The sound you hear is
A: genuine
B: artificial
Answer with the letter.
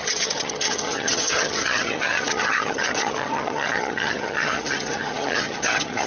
B